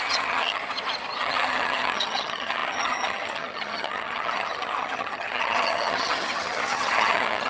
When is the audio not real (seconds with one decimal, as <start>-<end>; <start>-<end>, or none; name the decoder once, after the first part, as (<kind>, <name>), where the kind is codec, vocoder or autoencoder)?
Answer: 0.0-0.6 (vocoder, HiFi-GAN); 1.2-7.5